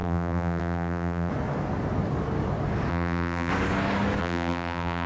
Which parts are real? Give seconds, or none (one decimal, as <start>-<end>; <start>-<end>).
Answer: 1.3-2.9; 3.5-4.2